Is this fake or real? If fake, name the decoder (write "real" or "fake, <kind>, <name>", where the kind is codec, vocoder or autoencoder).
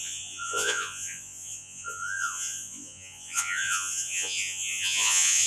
fake, vocoder, Vocos